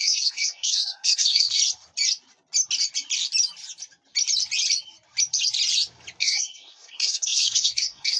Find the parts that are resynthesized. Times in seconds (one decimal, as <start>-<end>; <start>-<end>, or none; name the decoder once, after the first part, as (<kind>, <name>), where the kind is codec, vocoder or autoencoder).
0.0-1.6 (codec, SNAC); 6.2-8.2